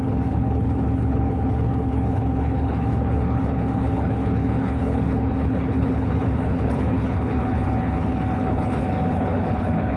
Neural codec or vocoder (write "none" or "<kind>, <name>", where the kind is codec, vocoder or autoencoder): codec, HILCodec